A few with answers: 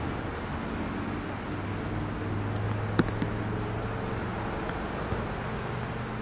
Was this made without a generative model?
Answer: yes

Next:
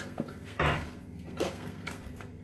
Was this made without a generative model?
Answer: no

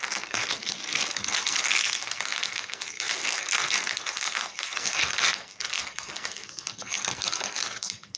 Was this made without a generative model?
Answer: no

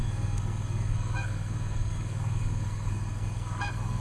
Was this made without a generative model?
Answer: no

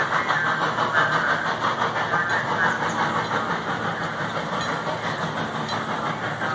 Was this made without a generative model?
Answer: yes